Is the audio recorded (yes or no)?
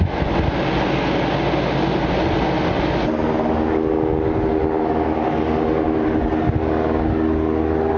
yes